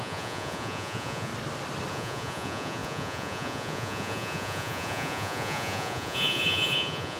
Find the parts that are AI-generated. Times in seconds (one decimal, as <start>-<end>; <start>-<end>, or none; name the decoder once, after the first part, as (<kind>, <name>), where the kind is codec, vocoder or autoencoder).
0.0-1.3 (vocoder, Vocos); 1.9-7.2